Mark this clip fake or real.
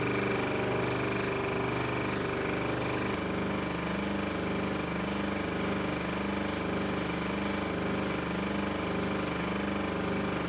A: real